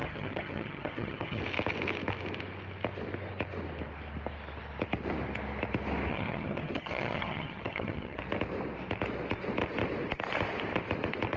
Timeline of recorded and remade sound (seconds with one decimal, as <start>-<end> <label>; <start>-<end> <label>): 0.0-1.4 remade; 1.4-6.1 recorded; 6.1-8.2 remade; 8.2-11.4 recorded